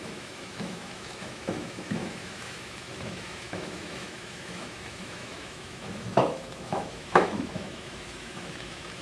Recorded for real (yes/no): no